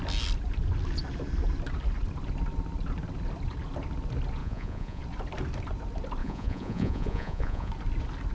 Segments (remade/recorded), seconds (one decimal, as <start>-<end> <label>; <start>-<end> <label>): 0.0-4.4 recorded; 4.4-5.0 remade; 5.0-6.2 recorded; 6.2-7.7 remade; 7.7-8.3 recorded